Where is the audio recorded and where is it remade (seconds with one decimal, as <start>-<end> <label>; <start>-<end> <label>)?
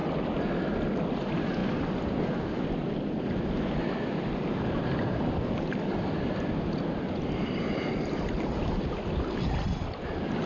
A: 0.0-10.5 recorded